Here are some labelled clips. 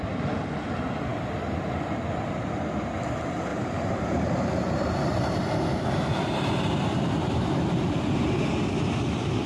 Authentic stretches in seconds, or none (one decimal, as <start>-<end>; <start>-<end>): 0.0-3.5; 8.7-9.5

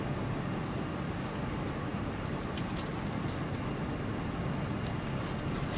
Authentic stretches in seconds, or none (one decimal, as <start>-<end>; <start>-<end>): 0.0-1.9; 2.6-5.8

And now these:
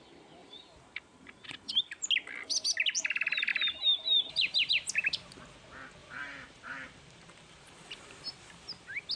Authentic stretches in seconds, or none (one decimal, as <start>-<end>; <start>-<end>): 0.0-0.4; 1.7-3.5; 4.7-6.0; 8.5-9.2

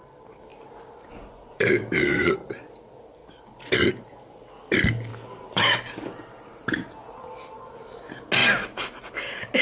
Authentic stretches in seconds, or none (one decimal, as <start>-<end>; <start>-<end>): 0.0-0.5; 2.8-5.1; 6.4-9.6

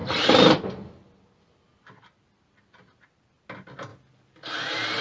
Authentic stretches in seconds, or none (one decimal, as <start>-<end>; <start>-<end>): 0.0-5.0

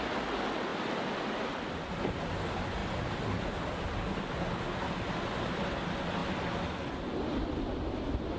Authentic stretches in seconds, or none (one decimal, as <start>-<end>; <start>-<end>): 0.0-0.7; 2.0-8.4

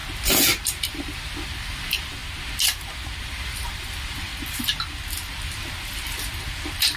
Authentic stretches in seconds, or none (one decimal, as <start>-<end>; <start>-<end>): 0.0-0.6; 2.2-3.2; 4.3-5.3